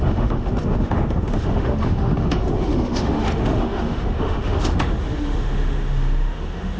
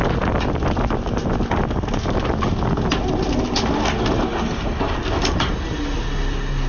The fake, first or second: first